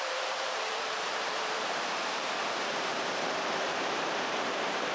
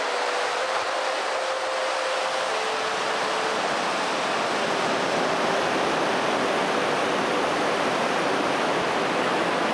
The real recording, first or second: second